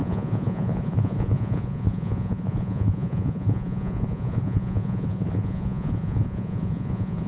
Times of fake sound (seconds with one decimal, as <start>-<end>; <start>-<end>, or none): 0.0-7.3